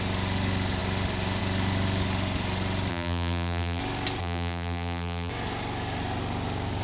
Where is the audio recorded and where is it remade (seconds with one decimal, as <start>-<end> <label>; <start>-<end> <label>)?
0.0-2.9 recorded; 2.9-3.8 remade; 3.8-4.2 recorded; 4.2-5.3 remade; 5.3-6.8 recorded